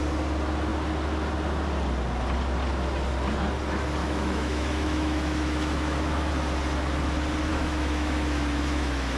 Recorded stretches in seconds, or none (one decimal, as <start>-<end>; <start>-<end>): 0.0-4.0; 6.3-7.5